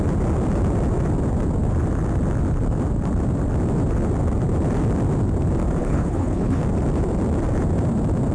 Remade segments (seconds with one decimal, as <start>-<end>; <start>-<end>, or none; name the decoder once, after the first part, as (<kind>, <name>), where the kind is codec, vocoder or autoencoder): 5.8-6.6 (codec, HILCodec)